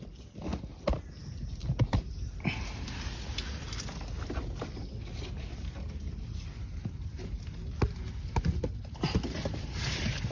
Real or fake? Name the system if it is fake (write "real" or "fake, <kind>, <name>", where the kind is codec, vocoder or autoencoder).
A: real